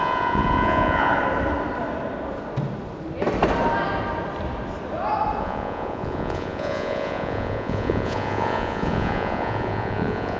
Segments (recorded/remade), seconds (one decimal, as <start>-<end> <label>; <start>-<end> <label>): 0.0-1.1 remade; 1.1-5.4 recorded; 5.4-10.4 remade